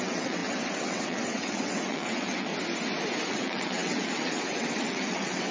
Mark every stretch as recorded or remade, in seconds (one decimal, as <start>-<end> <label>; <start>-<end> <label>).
0.0-2.5 remade; 2.5-3.3 recorded; 3.3-5.5 remade